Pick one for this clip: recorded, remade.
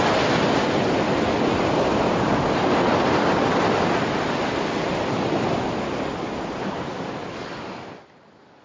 recorded